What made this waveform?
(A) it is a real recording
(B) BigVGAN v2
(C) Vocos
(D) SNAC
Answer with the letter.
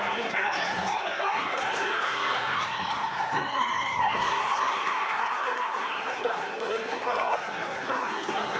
D